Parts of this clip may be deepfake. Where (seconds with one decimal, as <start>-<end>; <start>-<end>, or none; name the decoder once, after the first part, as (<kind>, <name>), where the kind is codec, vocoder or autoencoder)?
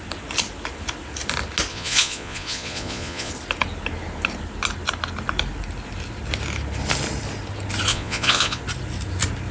1.7-3.3 (vocoder, Vocos); 7.9-8.6